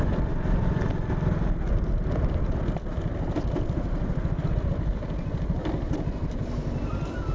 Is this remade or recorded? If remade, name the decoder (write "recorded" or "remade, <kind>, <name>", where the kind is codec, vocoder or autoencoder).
recorded